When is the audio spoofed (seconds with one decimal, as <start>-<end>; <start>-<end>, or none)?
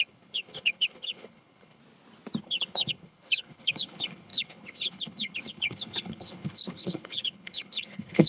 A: 0.0-1.8; 2.4-8.3